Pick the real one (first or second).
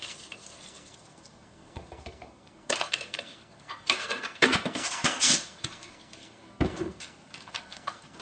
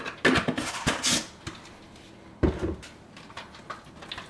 second